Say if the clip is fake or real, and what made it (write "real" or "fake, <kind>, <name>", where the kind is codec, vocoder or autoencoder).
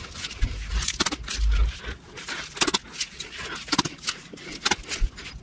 real